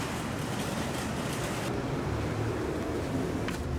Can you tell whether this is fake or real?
real